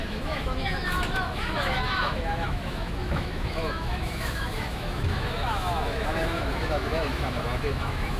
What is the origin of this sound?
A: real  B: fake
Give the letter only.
B